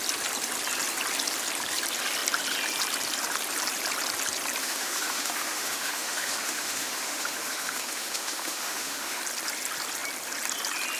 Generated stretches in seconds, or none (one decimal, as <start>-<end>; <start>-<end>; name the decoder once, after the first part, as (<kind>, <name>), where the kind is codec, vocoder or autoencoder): 4.6-9.2 (autoencoder, DAC-VAE)